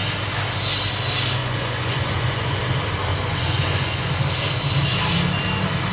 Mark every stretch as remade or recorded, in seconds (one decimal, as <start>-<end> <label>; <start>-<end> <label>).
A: 0.0-1.4 recorded; 1.4-2.6 remade; 2.6-3.1 recorded; 3.1-4.1 remade; 4.1-5.9 recorded